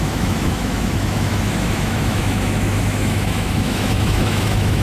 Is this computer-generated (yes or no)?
yes